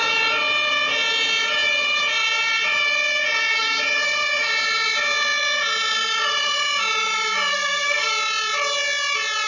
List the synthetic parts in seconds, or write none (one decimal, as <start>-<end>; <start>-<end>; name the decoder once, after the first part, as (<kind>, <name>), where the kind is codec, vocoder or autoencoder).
7.5-8.1 (codec, SNAC)